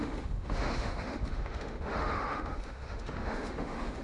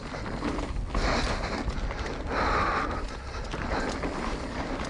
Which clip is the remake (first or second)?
first